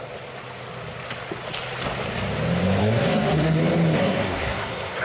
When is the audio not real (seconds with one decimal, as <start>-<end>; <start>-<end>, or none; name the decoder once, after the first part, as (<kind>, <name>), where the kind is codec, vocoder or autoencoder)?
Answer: 2.8-3.6 (codec, SNAC); 4.0-5.0